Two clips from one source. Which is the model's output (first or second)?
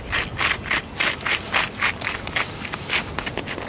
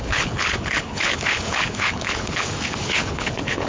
second